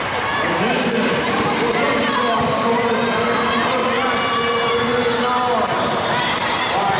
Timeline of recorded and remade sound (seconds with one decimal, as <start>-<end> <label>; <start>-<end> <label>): 0.0-7.0 recorded